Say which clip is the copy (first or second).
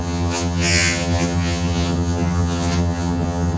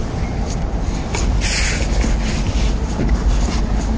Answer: first